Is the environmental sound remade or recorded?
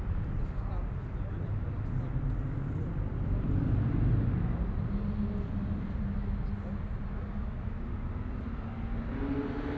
recorded